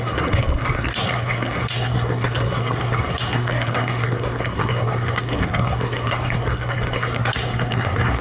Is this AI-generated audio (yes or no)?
yes